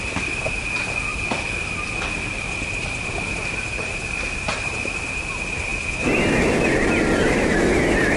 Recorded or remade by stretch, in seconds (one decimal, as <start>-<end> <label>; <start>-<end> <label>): 0.0-1.1 recorded; 1.1-3.3 remade; 3.3-8.2 recorded